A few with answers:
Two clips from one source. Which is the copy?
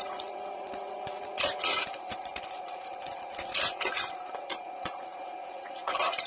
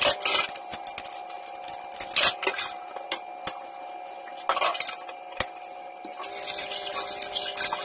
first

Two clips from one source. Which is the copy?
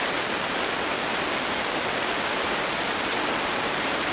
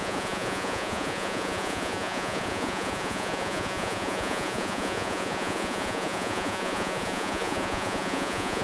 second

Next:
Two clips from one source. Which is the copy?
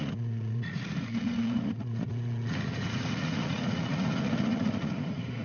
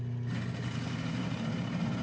first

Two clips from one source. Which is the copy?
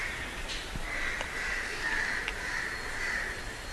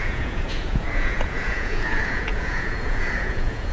second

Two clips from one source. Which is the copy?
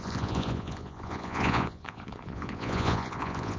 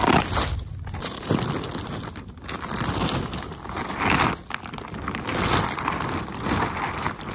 first